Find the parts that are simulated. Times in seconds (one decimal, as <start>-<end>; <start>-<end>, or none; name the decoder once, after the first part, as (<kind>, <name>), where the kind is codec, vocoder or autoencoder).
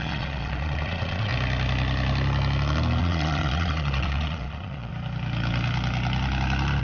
0.0-1.3 (vocoder, Vocos); 3.0-4.9